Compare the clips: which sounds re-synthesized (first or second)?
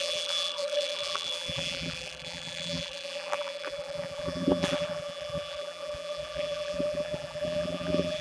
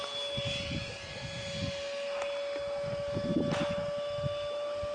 first